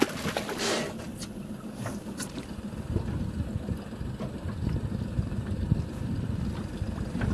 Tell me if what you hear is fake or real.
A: real